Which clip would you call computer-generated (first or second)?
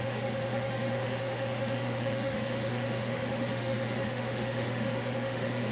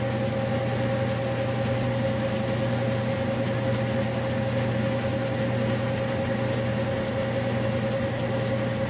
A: first